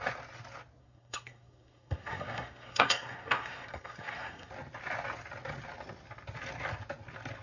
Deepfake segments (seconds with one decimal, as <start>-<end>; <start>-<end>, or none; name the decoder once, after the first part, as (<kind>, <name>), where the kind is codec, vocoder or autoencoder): 0.8-4.5 (codec, SNAC)

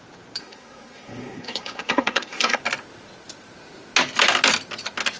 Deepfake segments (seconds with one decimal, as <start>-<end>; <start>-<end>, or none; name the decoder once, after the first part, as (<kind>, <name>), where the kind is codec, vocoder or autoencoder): 0.4-2.6 (codec, SNAC)

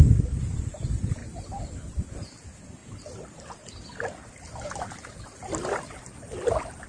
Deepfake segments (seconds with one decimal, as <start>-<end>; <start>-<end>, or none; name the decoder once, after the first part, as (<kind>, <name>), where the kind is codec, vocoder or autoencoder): 1.2-2.1 (vocoder, BigVGAN v2)

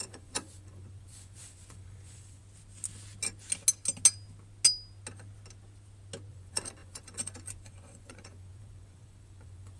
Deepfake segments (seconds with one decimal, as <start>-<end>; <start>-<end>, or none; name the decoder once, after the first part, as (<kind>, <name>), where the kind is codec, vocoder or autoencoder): 0.0-2.4 (vocoder, Vocos); 6.3-9.8